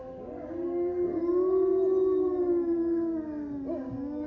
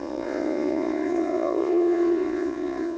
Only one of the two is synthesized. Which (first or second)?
second